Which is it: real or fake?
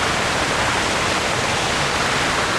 real